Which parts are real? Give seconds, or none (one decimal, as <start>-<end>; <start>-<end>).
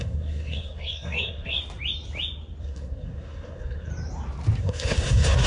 1.6-2.6; 3.9-4.6